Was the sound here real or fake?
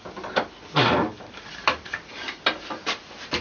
fake